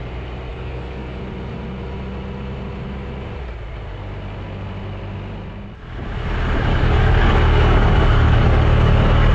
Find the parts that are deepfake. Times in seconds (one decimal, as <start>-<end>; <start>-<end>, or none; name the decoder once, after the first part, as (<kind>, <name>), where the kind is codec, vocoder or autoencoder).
0.5-1.2 (codec, DAC); 6.7-9.3